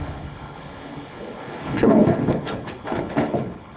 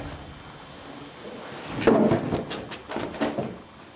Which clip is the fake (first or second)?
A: first